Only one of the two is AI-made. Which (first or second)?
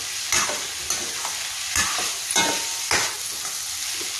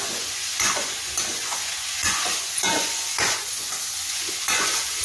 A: second